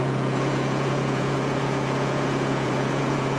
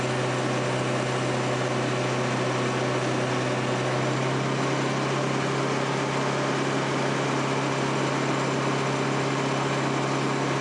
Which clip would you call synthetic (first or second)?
first